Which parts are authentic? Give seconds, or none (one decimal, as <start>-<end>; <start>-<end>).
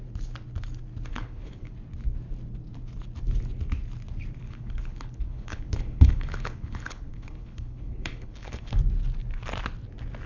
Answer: 0.0-1.1; 1.7-4.4; 8.8-10.3